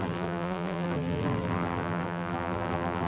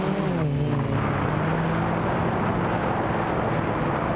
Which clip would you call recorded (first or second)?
second